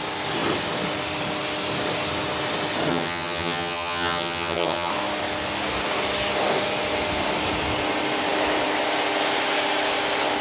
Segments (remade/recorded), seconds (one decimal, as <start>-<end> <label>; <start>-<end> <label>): 0.0-2.9 recorded; 2.9-4.9 remade; 4.9-10.4 recorded